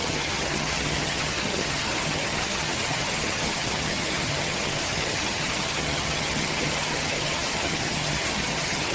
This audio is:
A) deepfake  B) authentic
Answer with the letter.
A